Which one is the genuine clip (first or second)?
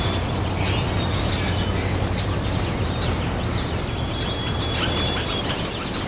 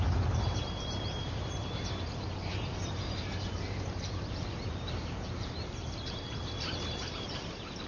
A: first